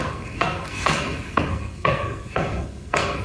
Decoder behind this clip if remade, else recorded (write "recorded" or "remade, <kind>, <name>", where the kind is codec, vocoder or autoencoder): remade, codec, SNAC